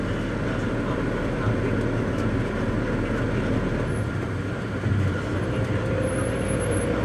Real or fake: real